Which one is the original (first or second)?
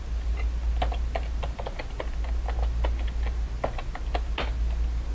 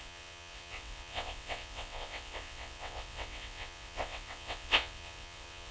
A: first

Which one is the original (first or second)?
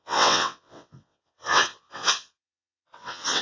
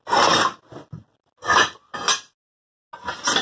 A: second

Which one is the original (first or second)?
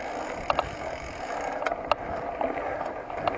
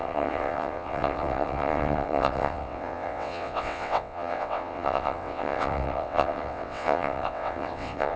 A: first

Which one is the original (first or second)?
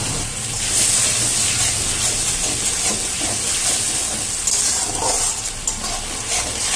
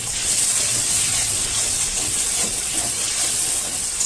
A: first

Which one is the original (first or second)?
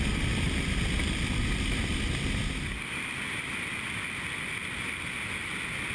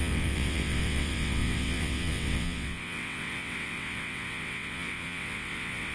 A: first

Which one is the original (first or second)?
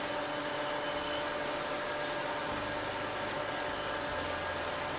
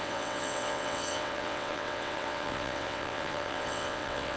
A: first